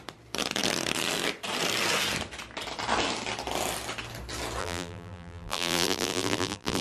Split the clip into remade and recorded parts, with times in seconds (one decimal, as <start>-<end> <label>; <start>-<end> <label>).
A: 0.0-4.6 recorded; 4.6-6.8 remade